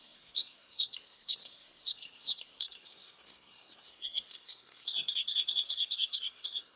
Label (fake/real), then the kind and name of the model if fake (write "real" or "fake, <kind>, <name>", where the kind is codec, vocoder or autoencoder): fake, codec, SNAC